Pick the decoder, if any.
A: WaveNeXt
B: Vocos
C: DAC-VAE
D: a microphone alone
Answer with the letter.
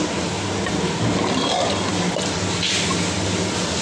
D